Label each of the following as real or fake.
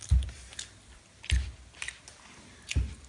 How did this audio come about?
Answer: real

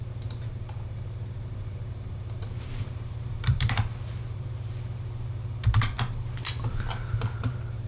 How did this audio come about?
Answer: fake